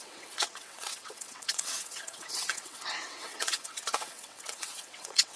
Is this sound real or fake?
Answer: fake